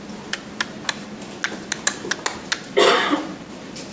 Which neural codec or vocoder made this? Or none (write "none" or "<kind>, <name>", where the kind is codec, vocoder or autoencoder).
none